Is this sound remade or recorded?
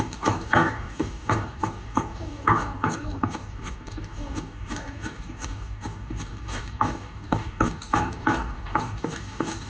remade